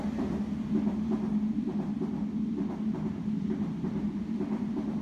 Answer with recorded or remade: recorded